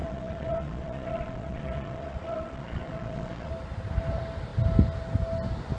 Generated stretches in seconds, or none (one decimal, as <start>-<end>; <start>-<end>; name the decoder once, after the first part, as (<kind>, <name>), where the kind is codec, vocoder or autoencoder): 0.0-3.5 (vocoder, Vocos)